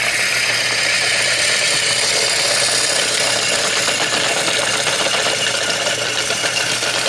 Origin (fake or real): real